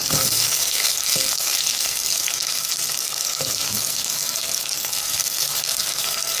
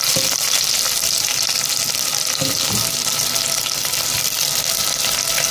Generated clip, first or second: first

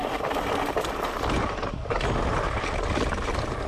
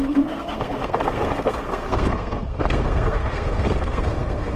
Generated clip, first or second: second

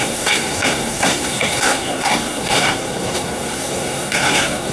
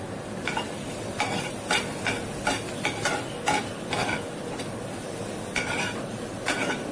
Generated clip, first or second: first